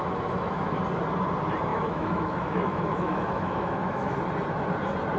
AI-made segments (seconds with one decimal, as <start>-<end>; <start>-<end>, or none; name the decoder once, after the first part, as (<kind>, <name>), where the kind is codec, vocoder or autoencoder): 0.0-0.8 (autoencoder, DAC-VAE); 1.7-4.2

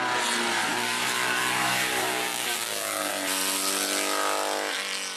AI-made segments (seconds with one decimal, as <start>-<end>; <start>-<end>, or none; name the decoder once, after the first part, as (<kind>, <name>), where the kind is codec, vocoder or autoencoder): 0.6-3.1 (codec, DAC)

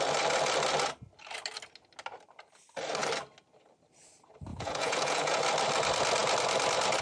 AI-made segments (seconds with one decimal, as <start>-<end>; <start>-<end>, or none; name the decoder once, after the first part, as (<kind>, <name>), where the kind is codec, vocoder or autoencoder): 4.5-5.4 (vocoder, Vocos)

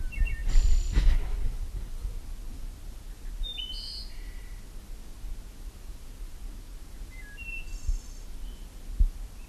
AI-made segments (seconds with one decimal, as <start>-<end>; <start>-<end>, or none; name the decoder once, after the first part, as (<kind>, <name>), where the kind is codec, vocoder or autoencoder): none

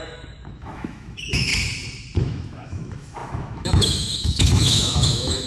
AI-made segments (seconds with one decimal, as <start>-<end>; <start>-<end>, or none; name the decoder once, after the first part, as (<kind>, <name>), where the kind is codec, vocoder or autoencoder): 0.0-1.5 (autoencoder, DAC-VAE); 2.2-5.5

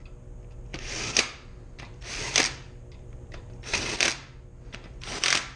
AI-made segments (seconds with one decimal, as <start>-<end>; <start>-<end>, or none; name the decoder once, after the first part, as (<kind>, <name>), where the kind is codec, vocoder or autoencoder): 0.7-4.1 (vocoder, BigVGAN v2)

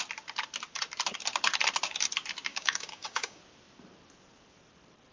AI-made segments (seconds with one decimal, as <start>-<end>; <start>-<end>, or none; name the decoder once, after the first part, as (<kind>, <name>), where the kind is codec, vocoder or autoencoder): 2.5-3.4 (codec, DAC)

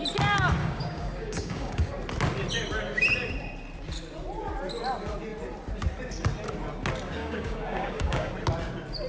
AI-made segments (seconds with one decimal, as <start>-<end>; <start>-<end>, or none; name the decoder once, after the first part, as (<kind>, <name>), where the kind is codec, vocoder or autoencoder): 0.6-1.9 (codec, DAC); 7.2-8.3